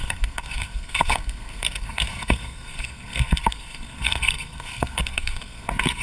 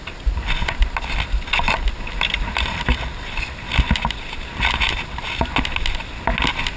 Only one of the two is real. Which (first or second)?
second